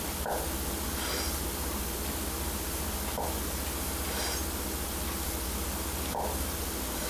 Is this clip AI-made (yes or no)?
no